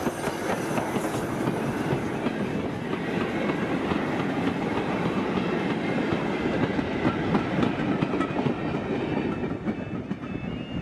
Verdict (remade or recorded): recorded